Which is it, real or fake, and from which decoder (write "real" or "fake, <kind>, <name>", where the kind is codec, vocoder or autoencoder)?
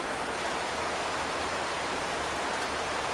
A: real